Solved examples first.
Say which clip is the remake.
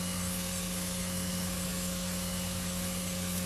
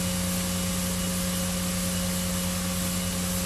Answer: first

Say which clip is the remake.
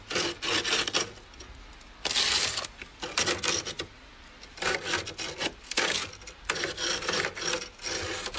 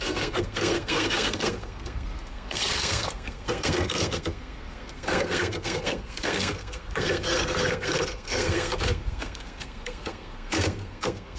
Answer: second